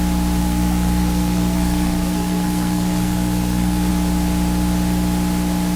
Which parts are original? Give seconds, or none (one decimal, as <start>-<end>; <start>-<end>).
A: 0.0-0.4; 3.9-5.8